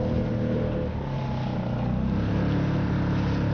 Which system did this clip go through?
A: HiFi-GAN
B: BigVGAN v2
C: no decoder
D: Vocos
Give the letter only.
C